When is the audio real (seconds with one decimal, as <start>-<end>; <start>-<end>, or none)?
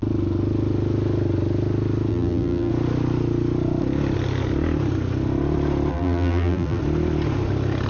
0.0-2.1; 2.7-5.9; 6.8-7.9